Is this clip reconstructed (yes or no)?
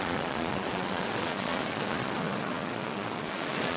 yes